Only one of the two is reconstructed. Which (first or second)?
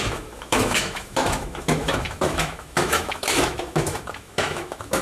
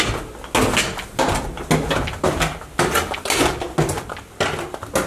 first